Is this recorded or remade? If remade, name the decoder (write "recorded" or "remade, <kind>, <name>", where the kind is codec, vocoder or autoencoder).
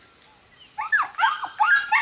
recorded